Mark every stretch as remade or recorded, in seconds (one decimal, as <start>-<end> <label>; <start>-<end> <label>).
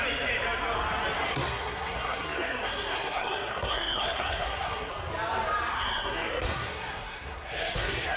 0.0-1.3 recorded; 1.3-4.9 remade; 4.9-5.7 recorded; 5.7-8.2 remade